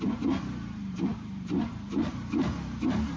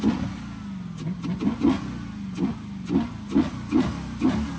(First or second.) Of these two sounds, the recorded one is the second